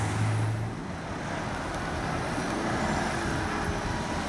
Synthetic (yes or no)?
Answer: no